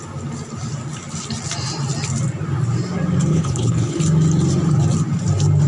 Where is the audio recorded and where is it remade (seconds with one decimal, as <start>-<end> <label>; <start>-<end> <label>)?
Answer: 0.0-3.3 recorded; 3.3-4.0 remade; 4.0-5.7 recorded